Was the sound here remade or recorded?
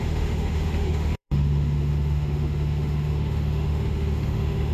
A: remade